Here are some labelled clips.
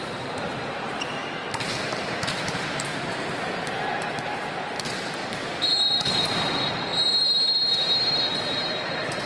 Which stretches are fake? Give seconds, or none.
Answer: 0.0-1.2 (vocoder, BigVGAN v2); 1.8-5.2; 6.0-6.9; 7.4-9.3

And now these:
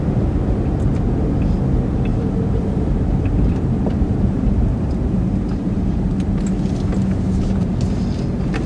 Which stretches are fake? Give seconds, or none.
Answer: 2.1-6.4 (vocoder, BigVGAN v2)

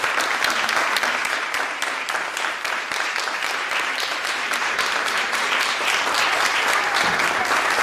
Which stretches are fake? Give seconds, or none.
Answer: 1.2-5.9 (vocoder, BigVGAN v2)

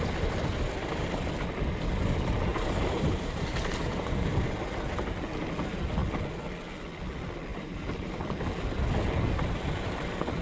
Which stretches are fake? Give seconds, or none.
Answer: 2.5-4.3 (vocoder, BigVGAN v2); 7.5-8.2

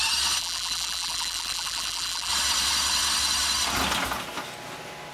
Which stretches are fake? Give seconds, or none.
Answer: 0.4-2.3 (vocoder, BigVGAN v2)

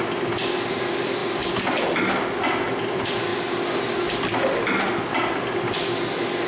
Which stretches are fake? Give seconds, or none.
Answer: 0.0-3.3 (vocoder, BigVGAN v2); 5.3-6.5

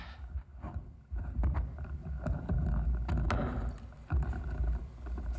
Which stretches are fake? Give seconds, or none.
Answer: none

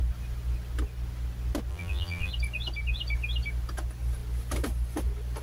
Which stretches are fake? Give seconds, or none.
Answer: 1.7-2.3 (vocoder, BigVGAN v2)